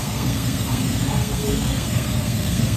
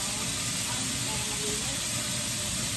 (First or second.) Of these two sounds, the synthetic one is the first